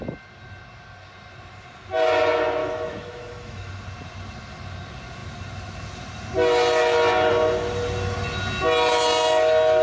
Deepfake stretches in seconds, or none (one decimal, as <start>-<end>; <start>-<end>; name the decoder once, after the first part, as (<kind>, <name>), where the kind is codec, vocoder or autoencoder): 2.6-3.7 (autoencoder, DAC-VAE)